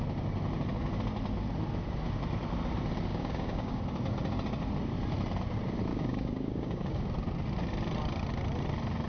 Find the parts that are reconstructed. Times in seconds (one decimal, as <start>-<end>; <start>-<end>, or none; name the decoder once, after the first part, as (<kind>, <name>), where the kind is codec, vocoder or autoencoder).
3.1-3.8 (codec, DAC); 5.9-7.0

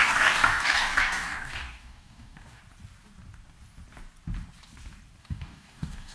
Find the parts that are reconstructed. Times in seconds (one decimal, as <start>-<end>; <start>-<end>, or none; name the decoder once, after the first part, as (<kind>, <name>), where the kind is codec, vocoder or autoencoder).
0.0-2.6 (codec, DAC); 5.2-6.1

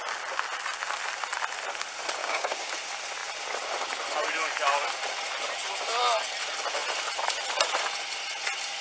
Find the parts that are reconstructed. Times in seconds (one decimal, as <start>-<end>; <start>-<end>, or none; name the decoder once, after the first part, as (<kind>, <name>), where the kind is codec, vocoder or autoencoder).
2.2-2.7 (codec, DAC)

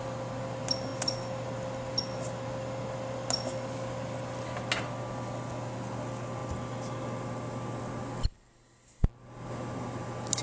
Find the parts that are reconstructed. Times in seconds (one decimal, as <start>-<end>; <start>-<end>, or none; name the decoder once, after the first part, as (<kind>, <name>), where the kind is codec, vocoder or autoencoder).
none

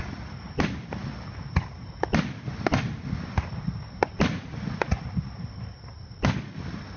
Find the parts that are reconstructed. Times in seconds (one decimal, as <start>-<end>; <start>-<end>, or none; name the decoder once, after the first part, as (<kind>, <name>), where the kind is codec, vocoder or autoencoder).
none

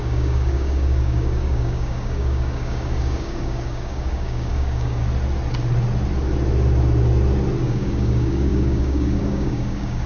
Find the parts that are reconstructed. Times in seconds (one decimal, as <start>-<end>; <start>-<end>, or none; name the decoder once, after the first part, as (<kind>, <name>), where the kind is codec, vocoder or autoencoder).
0.0-5.0 (codec, DAC); 7.6-10.1

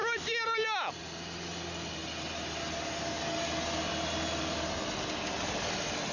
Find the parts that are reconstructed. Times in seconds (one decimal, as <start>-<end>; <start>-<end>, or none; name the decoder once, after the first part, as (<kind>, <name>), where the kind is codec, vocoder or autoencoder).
none

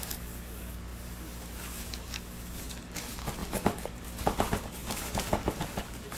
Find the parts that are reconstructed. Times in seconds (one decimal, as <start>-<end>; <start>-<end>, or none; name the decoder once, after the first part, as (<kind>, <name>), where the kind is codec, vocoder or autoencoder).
0.0-6.2 (codec, DAC)